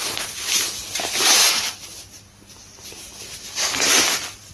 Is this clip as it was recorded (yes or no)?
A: yes